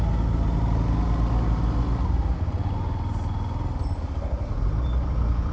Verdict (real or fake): real